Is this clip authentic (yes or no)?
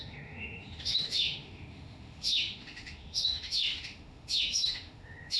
no